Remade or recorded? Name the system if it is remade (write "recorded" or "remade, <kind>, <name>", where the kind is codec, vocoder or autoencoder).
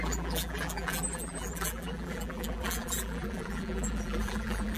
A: remade, vocoder, BigVGAN v2